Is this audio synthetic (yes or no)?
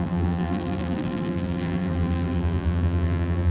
yes